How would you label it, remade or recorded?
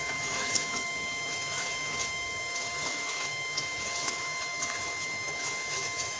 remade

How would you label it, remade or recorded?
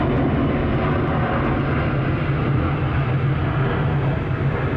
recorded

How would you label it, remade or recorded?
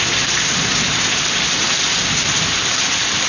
recorded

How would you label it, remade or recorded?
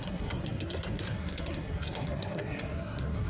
remade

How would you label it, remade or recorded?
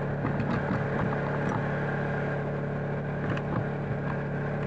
recorded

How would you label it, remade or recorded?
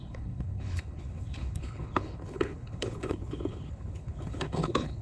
remade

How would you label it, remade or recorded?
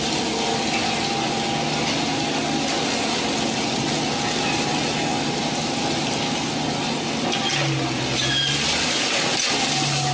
recorded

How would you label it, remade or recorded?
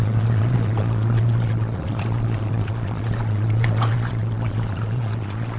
remade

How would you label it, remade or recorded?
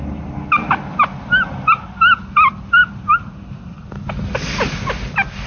recorded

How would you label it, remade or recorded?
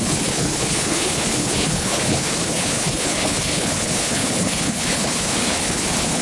remade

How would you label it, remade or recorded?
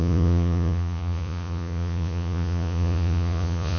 remade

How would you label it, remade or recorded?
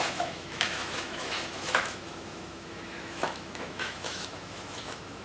remade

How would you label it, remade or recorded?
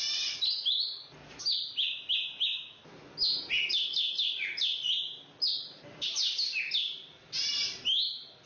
recorded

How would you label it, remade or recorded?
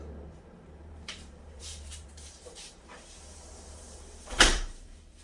remade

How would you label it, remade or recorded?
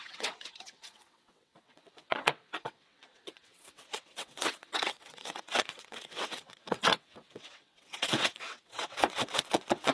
remade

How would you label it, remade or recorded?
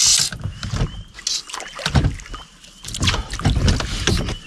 recorded